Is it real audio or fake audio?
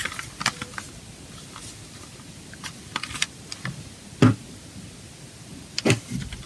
real